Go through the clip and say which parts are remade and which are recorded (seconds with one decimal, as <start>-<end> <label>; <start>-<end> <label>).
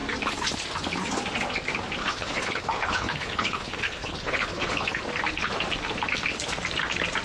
0.0-2.0 recorded; 2.0-5.0 remade; 5.0-7.2 recorded